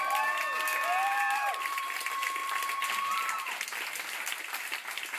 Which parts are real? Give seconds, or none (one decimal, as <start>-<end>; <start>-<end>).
0.0-1.1; 1.8-5.2